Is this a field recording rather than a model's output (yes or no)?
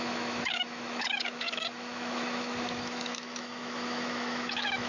no